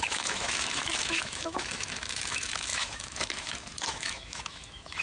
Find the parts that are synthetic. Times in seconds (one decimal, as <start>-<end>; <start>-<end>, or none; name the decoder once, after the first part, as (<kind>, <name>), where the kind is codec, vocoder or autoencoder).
0.0-5.0 (autoencoder, DAC-VAE)